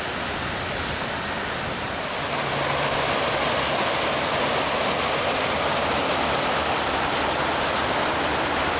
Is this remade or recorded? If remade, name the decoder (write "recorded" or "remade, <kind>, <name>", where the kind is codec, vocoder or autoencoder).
recorded